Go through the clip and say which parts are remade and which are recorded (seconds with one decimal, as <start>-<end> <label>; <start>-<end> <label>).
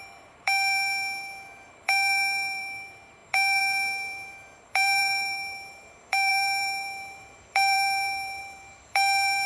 0.0-9.5 remade